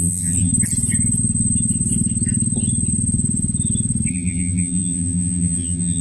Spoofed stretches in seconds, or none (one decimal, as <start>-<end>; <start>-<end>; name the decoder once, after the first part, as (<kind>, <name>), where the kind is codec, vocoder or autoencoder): 0.0-0.5 (vocoder, BigVGAN v2); 4.1-6.0